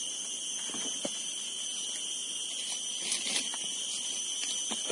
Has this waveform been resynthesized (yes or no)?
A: no